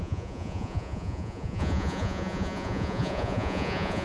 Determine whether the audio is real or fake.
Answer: fake